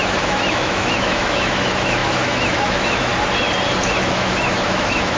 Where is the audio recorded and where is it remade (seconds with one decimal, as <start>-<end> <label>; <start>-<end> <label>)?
0.0-3.1 remade; 3.1-4.1 recorded; 4.1-5.2 remade

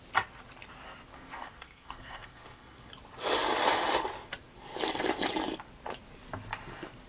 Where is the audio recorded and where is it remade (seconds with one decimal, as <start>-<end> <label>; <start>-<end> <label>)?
0.0-1.1 recorded; 1.1-2.9 remade; 2.9-7.1 recorded

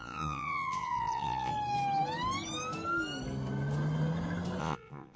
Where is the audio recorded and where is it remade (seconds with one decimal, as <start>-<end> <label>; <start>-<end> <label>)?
0.0-1.5 remade; 1.5-4.6 recorded; 4.6-5.2 remade

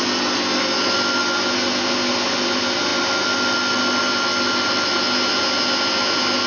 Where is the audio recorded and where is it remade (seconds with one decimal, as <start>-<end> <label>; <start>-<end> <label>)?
0.0-6.5 recorded

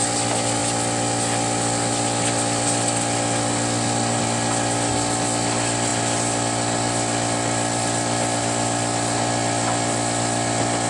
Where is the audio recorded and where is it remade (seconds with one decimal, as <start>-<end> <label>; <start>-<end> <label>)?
0.0-10.9 recorded

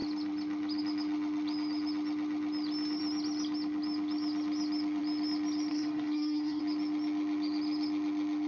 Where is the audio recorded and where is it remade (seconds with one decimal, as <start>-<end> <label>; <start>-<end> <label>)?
0.0-5.7 recorded; 5.7-6.6 remade; 6.6-8.5 recorded

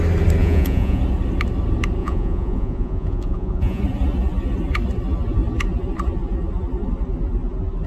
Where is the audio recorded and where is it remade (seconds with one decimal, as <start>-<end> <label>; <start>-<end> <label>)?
0.0-0.4 recorded; 0.4-1.0 remade; 1.0-2.0 recorded; 2.0-3.8 remade; 3.8-7.9 recorded